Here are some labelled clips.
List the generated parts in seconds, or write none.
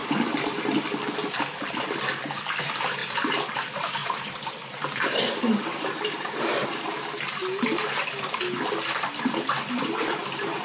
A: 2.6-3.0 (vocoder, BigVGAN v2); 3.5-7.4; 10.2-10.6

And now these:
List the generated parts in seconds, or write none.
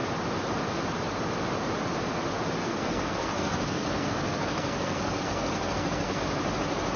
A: 2.6-6.2 (codec, SNAC)